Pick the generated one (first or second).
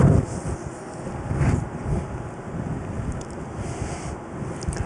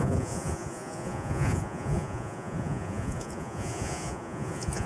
second